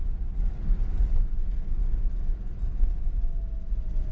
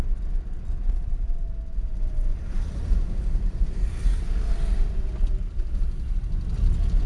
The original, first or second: first